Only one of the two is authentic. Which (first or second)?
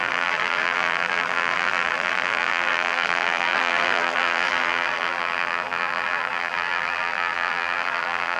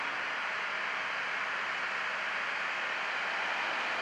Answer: second